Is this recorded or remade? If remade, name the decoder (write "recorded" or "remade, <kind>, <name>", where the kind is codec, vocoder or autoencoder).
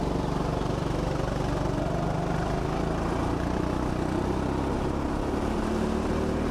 recorded